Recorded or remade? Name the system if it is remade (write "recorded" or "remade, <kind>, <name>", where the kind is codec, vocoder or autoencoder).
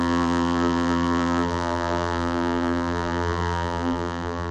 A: remade, vocoder, BigVGAN v2